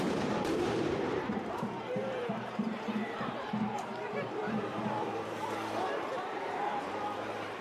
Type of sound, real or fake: fake